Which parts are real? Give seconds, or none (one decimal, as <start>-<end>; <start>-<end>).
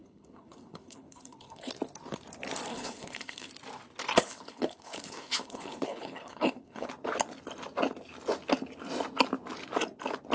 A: 1.7-2.7; 3.5-4.2; 6.9-10.3